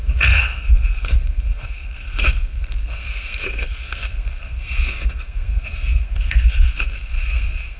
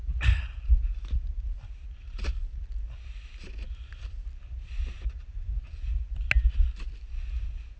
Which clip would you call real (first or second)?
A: second